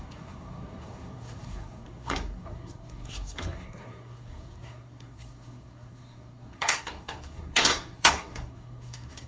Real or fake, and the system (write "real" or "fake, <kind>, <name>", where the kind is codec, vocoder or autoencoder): fake, codec, SNAC